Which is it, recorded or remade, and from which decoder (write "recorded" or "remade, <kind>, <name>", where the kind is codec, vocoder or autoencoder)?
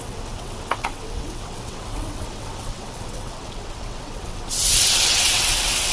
remade, vocoder, WaveNeXt